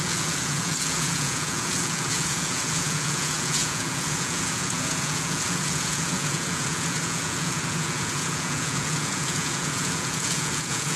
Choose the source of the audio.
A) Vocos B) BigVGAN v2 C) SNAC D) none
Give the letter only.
A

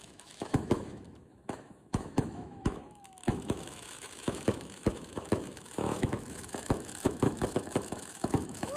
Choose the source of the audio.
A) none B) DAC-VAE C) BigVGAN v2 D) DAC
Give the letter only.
B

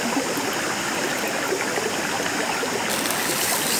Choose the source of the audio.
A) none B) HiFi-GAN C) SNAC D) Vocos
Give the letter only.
A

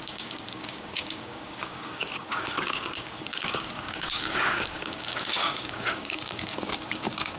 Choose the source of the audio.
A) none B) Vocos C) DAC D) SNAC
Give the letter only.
C